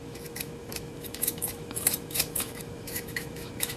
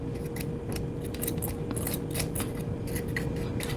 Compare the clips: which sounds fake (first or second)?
first